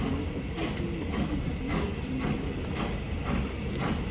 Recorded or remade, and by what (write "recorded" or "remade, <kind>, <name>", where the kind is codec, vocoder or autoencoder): recorded